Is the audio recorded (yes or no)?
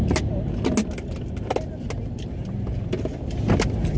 yes